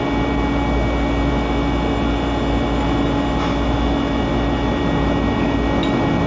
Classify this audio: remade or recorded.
recorded